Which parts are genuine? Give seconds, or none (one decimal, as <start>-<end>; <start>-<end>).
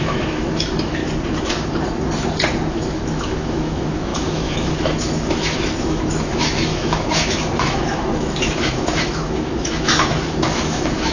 1.0-2.7